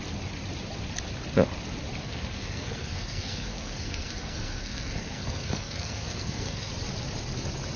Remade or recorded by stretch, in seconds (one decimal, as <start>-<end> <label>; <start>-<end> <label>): 0.0-2.0 recorded; 2.0-6.7 remade; 6.7-7.8 recorded